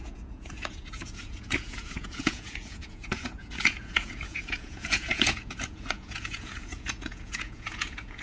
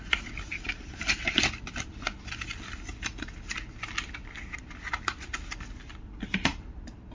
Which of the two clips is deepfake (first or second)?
first